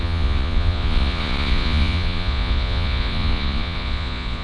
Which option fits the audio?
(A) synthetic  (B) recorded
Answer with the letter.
A